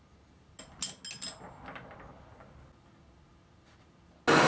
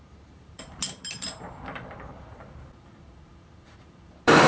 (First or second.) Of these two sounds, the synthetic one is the second